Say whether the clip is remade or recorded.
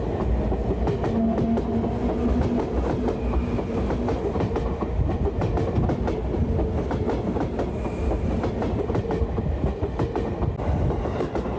recorded